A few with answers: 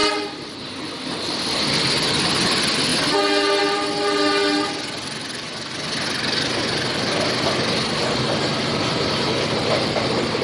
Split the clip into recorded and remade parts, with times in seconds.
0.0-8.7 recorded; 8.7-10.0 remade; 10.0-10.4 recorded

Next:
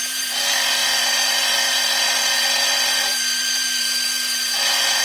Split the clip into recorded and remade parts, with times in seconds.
0.0-5.0 remade

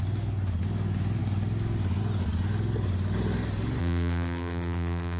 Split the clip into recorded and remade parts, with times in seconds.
0.0-3.8 recorded; 3.8-5.2 remade

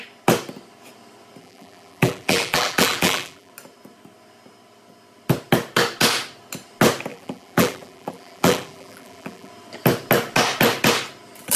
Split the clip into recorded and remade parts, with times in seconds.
0.0-1.4 recorded; 1.4-3.5 remade; 3.5-7.1 recorded; 7.1-9.5 remade; 9.5-11.6 recorded

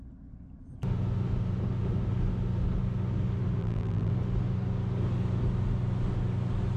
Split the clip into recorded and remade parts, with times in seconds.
0.0-3.6 recorded; 3.6-4.1 remade; 4.1-6.8 recorded

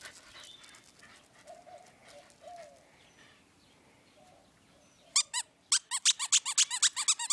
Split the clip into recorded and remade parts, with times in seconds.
0.0-7.3 recorded

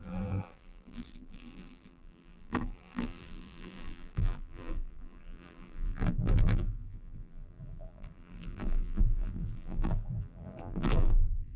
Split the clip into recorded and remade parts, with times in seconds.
0.0-11.6 remade